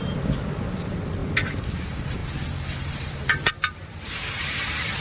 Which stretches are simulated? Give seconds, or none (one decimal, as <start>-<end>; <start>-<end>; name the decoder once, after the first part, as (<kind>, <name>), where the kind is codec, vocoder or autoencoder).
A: 0.0-2.2 (vocoder, BigVGAN v2); 3.5-5.0